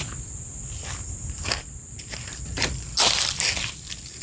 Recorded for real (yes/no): yes